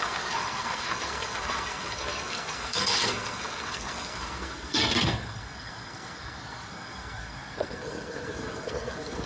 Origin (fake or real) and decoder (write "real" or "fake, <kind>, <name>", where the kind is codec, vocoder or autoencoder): fake, codec, SNAC